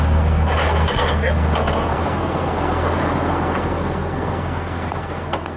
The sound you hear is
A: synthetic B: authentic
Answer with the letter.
A